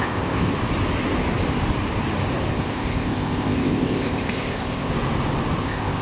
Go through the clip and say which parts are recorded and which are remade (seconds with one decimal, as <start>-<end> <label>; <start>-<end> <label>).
0.0-0.5 remade; 0.5-2.5 recorded; 2.5-4.9 remade; 4.9-5.6 recorded; 5.6-6.0 remade